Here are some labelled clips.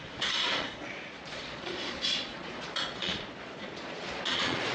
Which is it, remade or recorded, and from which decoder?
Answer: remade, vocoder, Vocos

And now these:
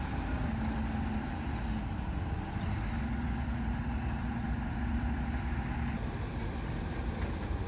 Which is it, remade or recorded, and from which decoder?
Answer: recorded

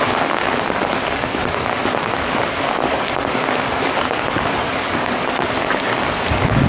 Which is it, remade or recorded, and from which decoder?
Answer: remade, codec, DAC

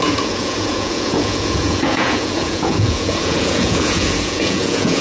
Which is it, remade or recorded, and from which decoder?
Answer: remade, vocoder, Vocos